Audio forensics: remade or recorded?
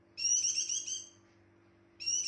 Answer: recorded